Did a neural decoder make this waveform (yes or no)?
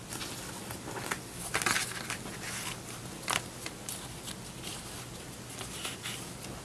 no